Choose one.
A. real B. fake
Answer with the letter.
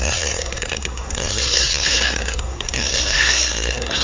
B